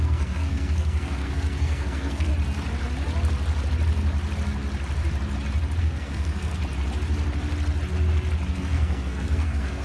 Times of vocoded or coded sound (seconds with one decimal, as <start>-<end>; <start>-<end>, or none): 0.0-2.3; 5.8-6.6; 8.5-9.8